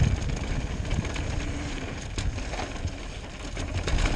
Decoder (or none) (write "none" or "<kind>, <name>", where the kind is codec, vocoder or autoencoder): none